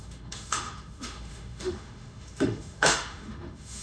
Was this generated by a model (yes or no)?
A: yes